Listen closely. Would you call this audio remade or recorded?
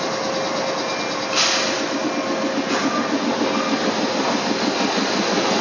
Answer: recorded